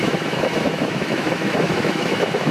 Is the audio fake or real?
fake